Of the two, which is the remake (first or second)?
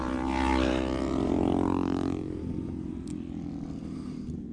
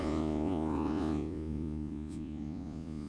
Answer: second